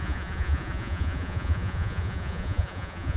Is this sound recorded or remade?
remade